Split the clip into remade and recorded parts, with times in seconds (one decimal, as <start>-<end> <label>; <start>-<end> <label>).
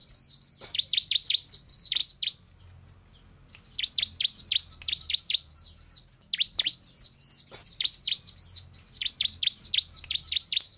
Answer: 0.0-10.8 recorded